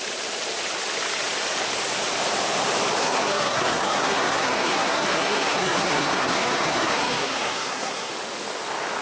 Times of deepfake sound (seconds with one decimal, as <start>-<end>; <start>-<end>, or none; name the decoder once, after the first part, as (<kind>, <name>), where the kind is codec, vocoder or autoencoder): 3.0-8.1 (codec, SNAC)